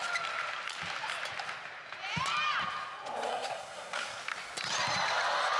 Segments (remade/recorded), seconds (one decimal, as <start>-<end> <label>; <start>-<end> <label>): 0.0-3.3 recorded; 3.3-4.2 remade; 4.2-5.6 recorded